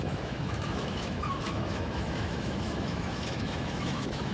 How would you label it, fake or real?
fake